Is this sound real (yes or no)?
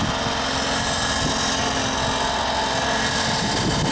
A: yes